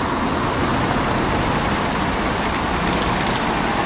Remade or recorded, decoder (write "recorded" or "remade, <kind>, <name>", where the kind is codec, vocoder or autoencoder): recorded